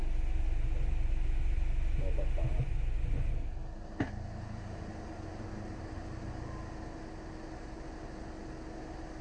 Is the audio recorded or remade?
recorded